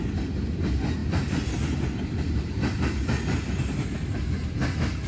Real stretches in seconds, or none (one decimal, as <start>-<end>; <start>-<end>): 0.0-5.1